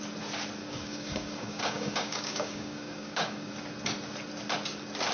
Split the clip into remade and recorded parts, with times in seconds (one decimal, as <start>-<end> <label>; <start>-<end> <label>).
0.0-0.6 recorded; 0.6-3.5 remade; 3.5-5.1 recorded